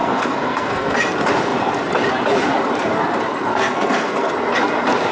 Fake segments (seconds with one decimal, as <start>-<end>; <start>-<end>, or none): 0.0-1.0; 3.5-4.3